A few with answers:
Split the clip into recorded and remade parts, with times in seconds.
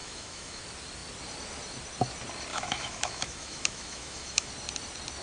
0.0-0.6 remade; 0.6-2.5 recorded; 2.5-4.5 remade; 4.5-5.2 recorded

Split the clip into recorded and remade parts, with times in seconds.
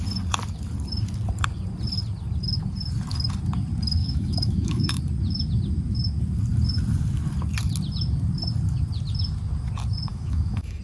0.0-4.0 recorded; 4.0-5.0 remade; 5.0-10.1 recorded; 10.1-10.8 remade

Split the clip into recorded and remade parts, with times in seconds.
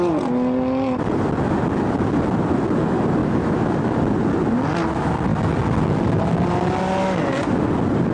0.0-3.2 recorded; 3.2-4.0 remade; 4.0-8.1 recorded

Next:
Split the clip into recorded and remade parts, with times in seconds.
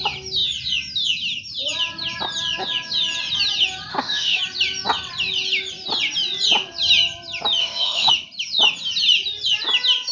0.0-3.9 recorded; 3.9-4.4 remade; 4.4-7.6 recorded; 7.6-8.1 remade; 8.1-10.1 recorded